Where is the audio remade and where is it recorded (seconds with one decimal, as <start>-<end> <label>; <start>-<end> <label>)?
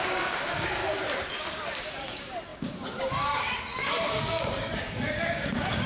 0.0-0.8 remade; 0.8-1.4 recorded; 1.4-5.9 remade